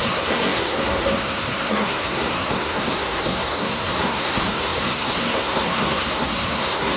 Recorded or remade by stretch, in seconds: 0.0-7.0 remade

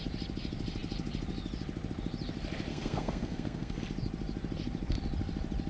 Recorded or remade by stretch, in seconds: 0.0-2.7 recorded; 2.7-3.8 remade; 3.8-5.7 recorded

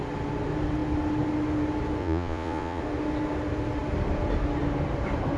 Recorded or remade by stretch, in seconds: 0.0-2.0 recorded; 2.0-2.8 remade; 2.8-5.4 recorded

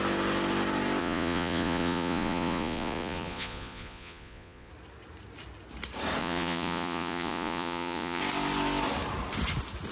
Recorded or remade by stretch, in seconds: 0.0-1.0 recorded; 1.0-4.7 remade; 4.7-6.2 recorded; 6.2-8.2 remade; 8.2-9.9 recorded

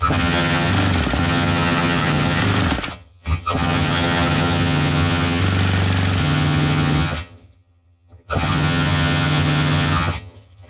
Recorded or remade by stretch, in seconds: 0.0-0.7 remade; 0.7-1.2 recorded; 1.2-2.4 remade; 2.4-2.9 recorded; 2.9-5.4 remade; 5.4-6.2 recorded; 6.2-10.7 remade

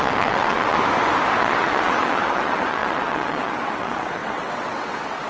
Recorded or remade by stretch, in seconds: 0.0-0.8 remade; 0.8-1.4 recorded; 1.4-5.3 remade